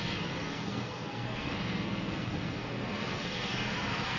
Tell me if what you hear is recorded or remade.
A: remade